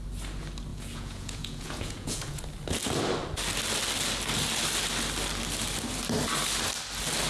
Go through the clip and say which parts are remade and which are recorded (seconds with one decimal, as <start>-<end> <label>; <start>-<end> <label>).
0.0-0.7 recorded; 0.7-2.4 remade; 2.4-7.3 recorded